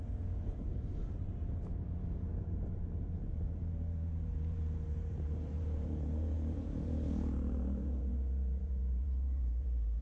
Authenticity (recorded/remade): remade